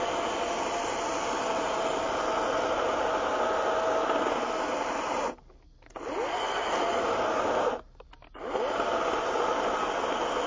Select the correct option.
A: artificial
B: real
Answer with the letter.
B